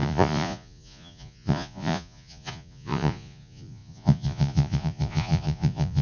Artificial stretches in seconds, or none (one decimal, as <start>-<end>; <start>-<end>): 0.0-6.0